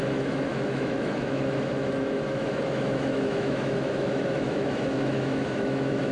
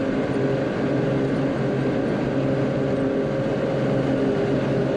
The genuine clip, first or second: second